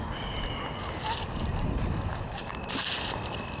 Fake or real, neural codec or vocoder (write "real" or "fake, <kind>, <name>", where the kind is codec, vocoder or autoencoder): real